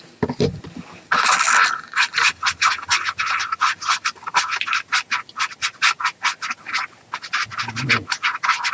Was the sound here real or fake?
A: real